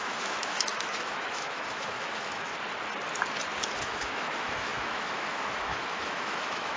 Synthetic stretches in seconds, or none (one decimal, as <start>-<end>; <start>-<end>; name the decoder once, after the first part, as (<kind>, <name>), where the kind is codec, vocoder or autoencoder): 0.0-2.5 (autoencoder, DAC-VAE); 3.7-6.8